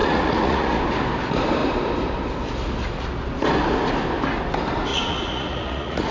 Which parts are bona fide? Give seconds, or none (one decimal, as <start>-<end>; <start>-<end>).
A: 0.8-4.9